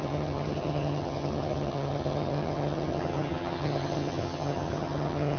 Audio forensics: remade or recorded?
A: remade